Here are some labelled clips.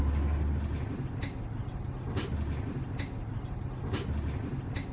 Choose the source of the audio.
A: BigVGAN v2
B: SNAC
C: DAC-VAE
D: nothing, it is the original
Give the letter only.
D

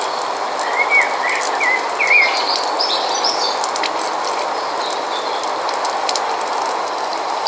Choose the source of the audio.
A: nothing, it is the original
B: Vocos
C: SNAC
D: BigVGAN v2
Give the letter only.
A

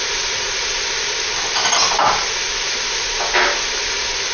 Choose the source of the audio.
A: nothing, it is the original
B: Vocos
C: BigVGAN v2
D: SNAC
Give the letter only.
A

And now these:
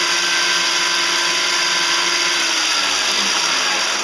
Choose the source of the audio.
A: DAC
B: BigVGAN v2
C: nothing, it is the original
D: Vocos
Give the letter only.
C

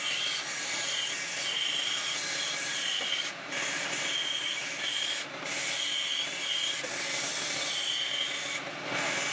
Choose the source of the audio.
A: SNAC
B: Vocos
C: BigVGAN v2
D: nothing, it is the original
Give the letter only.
D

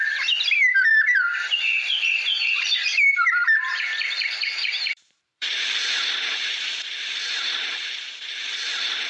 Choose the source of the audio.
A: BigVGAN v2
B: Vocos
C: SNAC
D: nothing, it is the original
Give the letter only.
A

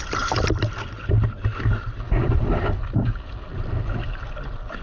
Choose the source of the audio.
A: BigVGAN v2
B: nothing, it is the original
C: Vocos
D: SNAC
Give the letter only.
B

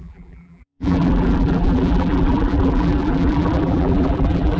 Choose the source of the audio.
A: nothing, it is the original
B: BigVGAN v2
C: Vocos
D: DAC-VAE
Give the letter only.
B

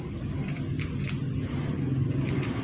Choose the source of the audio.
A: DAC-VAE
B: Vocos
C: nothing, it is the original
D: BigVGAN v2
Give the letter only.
C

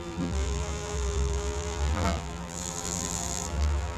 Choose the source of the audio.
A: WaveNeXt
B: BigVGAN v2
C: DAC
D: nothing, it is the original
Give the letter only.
B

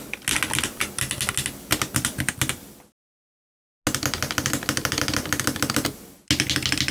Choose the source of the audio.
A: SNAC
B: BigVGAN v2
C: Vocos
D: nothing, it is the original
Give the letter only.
D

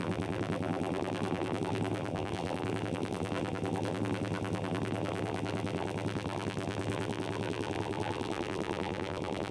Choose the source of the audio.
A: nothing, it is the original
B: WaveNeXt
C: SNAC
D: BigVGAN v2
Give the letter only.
D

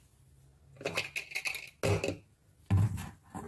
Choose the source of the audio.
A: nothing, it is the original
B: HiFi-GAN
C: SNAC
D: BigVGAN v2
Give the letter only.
A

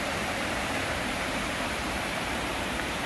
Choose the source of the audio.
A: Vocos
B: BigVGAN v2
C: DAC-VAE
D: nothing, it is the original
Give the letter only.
B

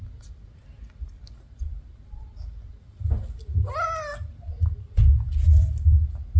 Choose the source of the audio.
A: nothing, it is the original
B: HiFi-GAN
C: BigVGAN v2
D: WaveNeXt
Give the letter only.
A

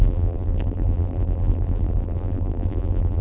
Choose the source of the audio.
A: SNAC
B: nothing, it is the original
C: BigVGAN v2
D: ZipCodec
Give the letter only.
C